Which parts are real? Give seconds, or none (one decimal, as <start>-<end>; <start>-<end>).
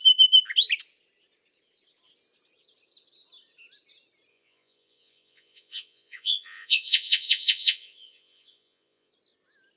0.0-4.3; 9.1-9.8